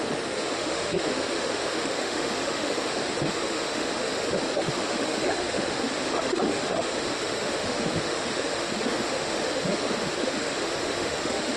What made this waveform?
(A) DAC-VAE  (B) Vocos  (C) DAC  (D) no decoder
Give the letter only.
A